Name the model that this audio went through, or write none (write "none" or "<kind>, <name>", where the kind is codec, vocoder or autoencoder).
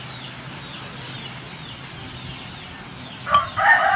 none